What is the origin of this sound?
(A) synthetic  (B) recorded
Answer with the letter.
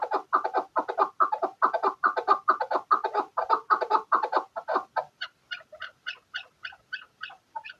B